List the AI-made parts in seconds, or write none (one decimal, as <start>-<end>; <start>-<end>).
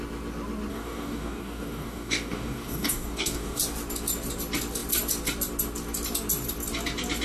0.7-3.6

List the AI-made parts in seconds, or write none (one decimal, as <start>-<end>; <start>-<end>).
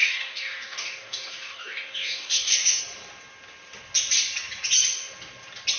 0.0-2.8